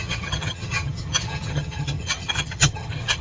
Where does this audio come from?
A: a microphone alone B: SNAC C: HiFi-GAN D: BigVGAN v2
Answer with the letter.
C